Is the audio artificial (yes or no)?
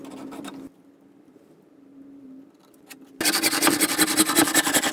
no